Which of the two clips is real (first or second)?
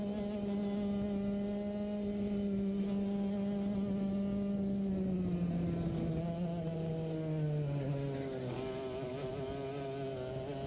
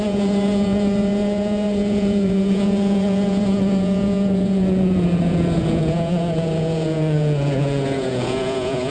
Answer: first